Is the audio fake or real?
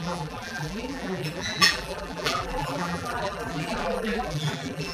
fake